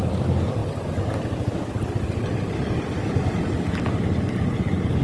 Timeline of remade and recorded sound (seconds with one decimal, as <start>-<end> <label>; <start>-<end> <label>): 0.0-5.0 recorded